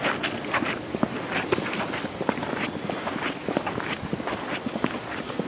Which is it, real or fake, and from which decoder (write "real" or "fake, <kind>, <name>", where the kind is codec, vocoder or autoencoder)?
real